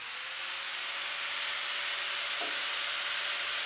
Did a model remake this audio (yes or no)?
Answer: no